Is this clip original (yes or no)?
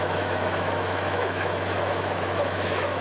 no